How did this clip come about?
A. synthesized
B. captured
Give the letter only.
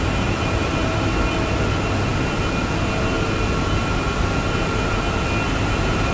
B